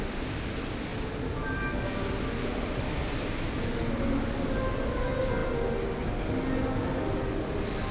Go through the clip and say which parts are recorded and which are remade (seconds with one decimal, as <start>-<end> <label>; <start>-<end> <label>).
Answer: 0.0-7.9 recorded